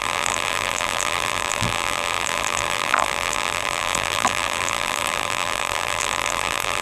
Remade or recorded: remade